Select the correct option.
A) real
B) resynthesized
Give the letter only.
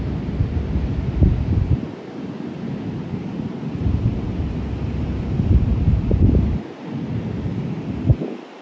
A